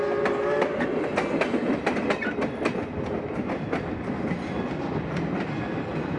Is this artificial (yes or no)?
no